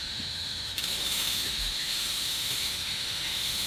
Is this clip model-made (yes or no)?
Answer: yes